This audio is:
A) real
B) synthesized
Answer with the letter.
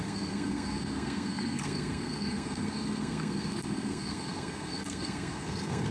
B